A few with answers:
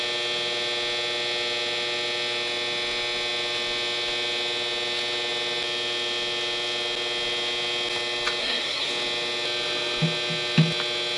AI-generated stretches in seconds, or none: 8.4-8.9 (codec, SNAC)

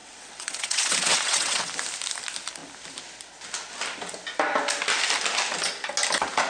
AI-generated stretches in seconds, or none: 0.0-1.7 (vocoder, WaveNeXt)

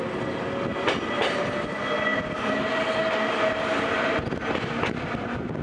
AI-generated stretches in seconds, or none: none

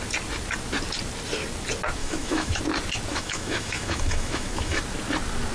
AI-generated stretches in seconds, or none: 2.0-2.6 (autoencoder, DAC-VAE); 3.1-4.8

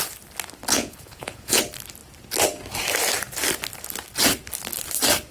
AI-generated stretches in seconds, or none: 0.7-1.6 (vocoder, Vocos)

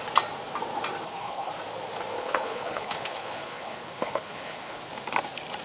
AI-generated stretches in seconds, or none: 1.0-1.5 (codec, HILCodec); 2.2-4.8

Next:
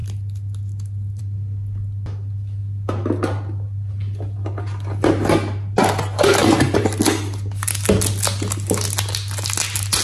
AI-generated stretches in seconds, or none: none